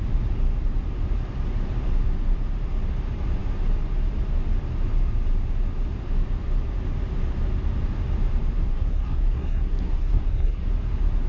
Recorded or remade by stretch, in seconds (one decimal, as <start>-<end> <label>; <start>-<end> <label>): 0.0-8.7 recorded; 8.7-10.7 remade; 10.7-11.3 recorded